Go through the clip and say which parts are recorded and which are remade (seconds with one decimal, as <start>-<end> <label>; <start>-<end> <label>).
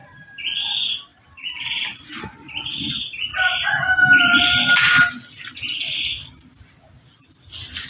0.0-0.6 remade; 0.6-1.1 recorded; 1.1-2.6 remade; 2.6-7.9 recorded